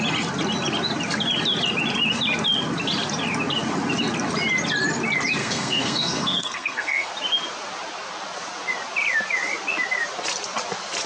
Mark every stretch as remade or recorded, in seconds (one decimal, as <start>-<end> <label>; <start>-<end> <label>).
0.0-5.4 recorded; 5.4-7.1 remade; 7.1-11.1 recorded